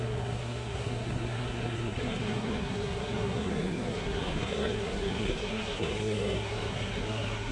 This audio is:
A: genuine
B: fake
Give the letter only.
B